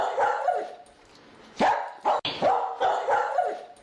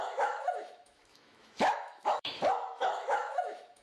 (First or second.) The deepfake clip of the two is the second